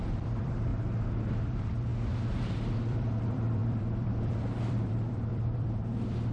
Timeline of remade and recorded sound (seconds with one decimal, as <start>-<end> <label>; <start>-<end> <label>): 0.0-0.7 remade; 0.7-1.4 recorded; 1.4-1.9 remade; 1.9-2.7 recorded; 2.7-6.3 remade